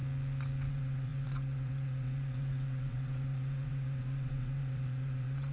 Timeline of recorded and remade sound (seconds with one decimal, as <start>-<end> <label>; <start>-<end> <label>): 0.0-0.7 recorded; 0.7-5.5 remade